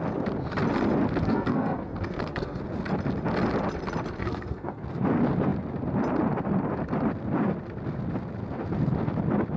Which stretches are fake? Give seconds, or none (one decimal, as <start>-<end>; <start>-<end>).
1.2-2.6; 4.2-4.8